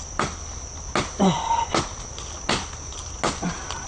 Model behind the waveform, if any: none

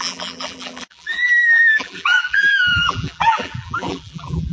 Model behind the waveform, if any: vocoder, BigVGAN v2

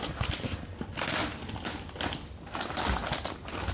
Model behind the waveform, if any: none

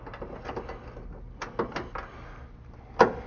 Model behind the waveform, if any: none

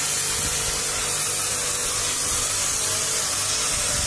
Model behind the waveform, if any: none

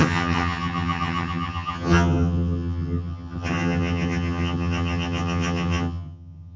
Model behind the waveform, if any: vocoder, HiFi-GAN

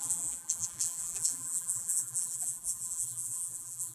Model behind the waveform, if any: vocoder, BigVGAN v2